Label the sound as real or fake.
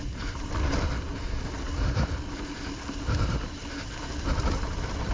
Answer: real